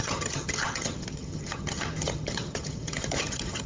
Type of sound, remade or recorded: remade